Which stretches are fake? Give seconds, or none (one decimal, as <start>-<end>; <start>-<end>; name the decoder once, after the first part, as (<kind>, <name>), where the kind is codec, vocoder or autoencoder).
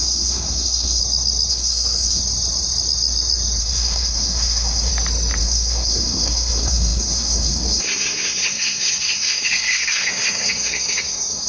0.0-1.0 (codec, SNAC); 1.5-2.2; 3.6-4.9; 5.4-11.5